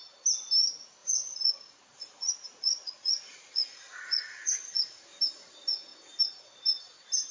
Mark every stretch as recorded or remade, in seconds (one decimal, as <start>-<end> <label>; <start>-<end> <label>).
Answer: 0.0-1.0 recorded; 1.0-5.2 remade; 5.2-7.3 recorded